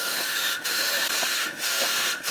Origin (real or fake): fake